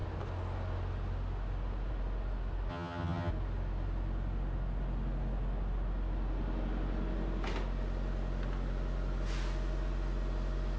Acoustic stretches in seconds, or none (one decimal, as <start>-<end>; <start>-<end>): 0.0-2.7; 3.3-10.8